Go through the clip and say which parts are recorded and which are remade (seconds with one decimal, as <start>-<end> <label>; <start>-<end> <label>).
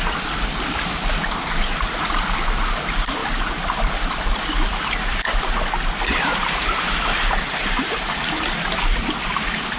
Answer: 0.0-6.3 recorded; 6.3-7.0 remade; 7.0-9.8 recorded